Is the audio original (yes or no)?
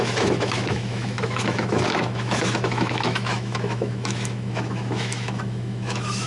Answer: no